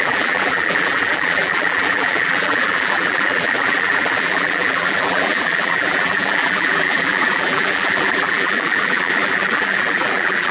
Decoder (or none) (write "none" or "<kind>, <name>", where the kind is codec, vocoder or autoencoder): vocoder, BigVGAN v2